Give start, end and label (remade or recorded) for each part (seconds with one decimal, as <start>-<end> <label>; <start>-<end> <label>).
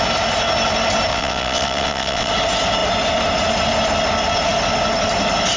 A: 0.0-1.1 recorded; 1.1-2.3 remade; 2.3-5.6 recorded